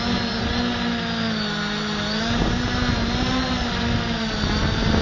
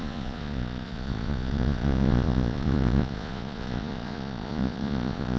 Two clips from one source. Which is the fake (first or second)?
second